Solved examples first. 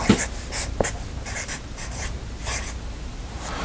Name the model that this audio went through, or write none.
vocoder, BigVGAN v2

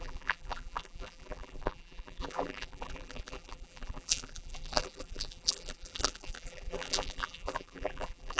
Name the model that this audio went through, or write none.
vocoder, BigVGAN v2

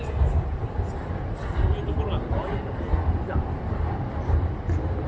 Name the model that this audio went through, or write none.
none